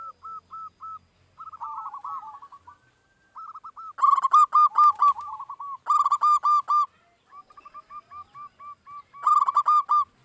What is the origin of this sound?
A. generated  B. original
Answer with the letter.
B